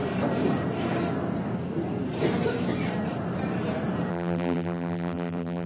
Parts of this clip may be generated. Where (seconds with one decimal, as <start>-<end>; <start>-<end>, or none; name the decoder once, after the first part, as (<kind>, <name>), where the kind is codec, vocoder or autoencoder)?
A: 4.1-5.7 (vocoder, BigVGAN v2)